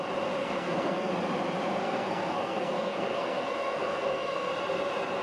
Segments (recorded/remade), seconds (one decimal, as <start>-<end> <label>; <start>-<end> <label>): 0.0-0.4 recorded; 0.4-1.1 remade; 1.1-1.8 recorded; 1.8-4.5 remade; 4.5-5.2 recorded